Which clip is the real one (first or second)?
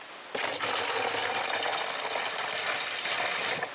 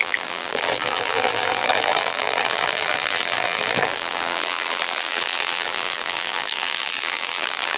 first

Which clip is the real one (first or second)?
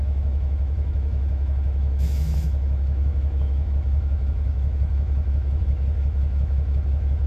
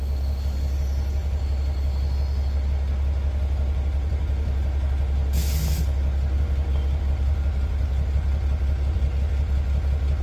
second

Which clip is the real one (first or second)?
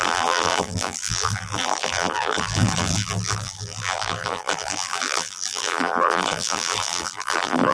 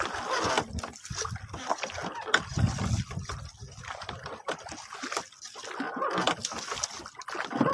second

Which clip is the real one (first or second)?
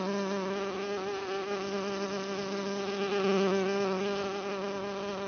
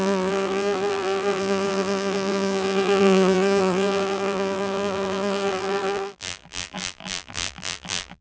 first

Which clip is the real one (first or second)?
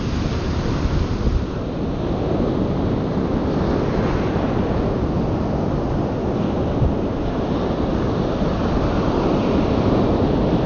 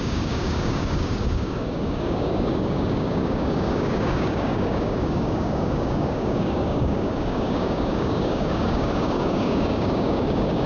first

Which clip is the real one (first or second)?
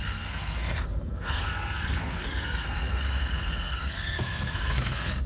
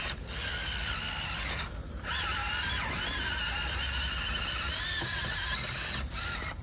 second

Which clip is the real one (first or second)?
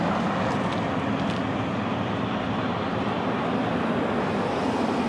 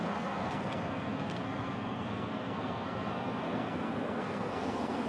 first